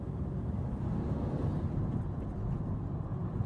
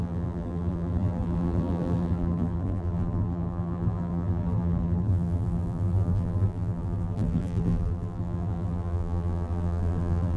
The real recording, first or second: first